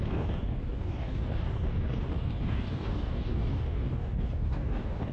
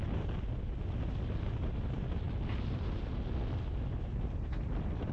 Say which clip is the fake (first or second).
first